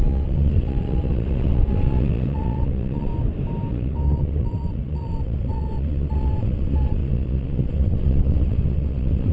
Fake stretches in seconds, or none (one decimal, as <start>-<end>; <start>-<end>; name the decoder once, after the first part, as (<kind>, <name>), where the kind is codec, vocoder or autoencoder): 0.0-3.1 (vocoder, WaveNeXt); 3.7-9.3